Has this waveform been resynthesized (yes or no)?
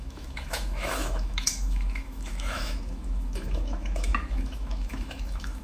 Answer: yes